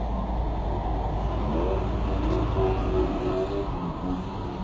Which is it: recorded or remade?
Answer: recorded